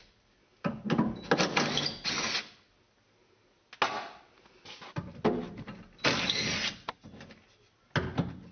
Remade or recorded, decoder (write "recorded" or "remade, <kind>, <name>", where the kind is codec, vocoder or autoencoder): recorded